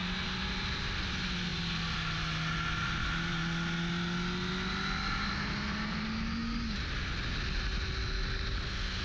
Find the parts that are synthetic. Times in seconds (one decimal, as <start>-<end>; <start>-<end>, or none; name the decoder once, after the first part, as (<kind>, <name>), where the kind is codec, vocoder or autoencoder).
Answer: none